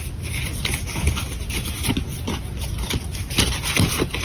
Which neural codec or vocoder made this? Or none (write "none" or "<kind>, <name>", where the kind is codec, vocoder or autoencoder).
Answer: none